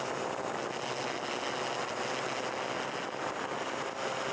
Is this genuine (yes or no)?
yes